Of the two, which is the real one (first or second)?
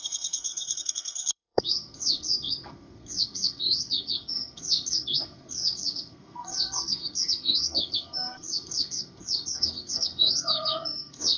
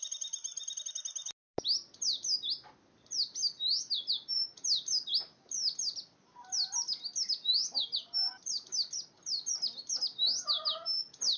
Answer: second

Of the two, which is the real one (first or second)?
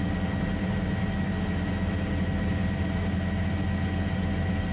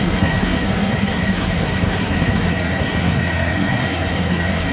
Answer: first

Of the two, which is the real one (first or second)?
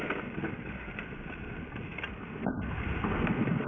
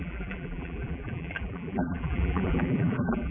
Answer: first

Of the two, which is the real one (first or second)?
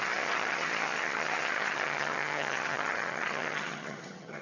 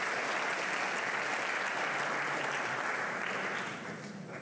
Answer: second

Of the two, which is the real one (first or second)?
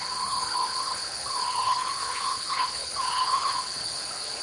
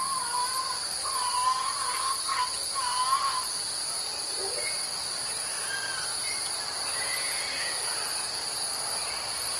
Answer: second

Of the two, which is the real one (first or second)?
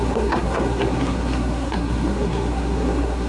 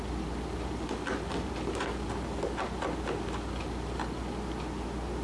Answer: second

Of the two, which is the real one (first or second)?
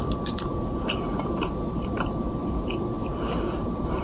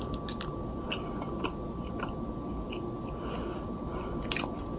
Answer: second